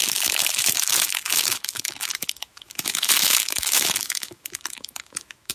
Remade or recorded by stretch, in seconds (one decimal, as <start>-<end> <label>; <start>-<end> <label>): 0.0-5.5 remade